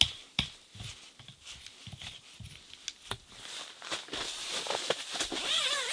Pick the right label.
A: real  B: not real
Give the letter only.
A